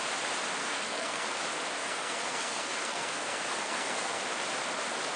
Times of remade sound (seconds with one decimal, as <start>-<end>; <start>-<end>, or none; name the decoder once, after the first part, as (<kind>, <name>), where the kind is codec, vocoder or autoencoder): 0.6-1.4 (codec, SNAC); 1.8-4.2